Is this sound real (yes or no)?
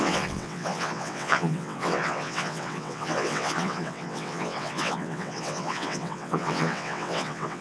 no